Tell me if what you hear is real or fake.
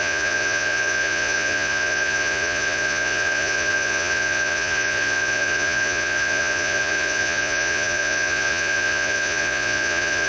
fake